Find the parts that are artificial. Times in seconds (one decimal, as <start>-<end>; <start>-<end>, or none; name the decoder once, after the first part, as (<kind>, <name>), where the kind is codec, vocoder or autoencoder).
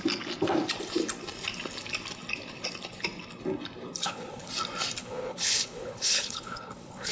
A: 4.0-4.5 (codec, HILCodec); 5.0-7.1